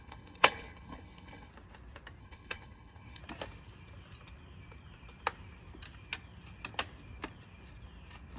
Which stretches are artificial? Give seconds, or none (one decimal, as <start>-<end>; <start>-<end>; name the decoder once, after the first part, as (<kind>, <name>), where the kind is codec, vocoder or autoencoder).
0.0-1.5 (codec, HILCodec); 2.2-3.2